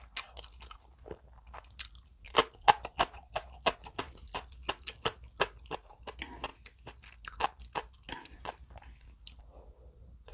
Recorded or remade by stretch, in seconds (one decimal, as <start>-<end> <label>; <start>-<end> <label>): 0.0-10.3 recorded